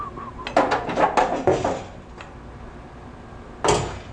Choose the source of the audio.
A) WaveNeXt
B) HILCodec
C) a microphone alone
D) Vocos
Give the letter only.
C